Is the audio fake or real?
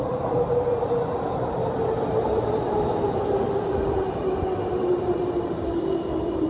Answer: fake